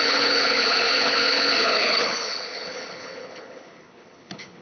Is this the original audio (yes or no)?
no